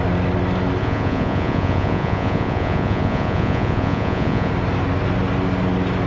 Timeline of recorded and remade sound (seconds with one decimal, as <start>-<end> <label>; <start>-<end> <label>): 0.0-0.8 recorded; 0.8-4.5 remade; 4.5-6.1 recorded